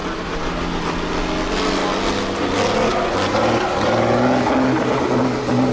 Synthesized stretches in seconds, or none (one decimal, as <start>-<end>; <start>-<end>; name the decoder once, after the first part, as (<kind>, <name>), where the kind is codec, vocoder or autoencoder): none